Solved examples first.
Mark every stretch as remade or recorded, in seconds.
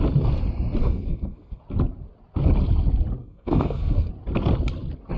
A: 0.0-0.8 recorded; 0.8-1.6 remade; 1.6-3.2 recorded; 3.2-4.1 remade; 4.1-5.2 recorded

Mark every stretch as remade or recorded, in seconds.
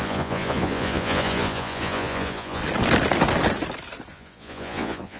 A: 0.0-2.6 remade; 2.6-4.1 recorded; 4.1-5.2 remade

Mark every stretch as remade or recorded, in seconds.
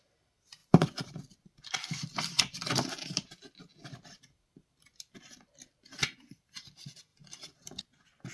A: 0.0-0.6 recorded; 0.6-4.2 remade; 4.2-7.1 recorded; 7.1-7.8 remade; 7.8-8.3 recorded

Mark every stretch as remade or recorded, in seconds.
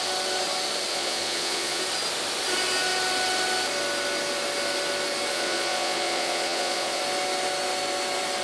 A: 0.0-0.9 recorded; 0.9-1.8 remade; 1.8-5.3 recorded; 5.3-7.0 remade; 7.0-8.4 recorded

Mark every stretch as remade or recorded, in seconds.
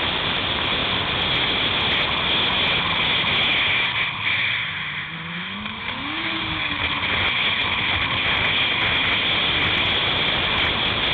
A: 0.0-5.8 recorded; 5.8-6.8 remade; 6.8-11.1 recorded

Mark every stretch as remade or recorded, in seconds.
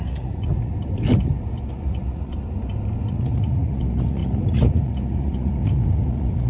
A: 0.0-0.7 remade; 0.7-1.7 recorded; 1.7-2.3 remade; 2.3-3.1 recorded; 3.1-6.5 remade